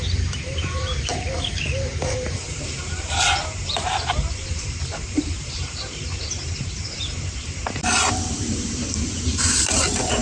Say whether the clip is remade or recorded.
remade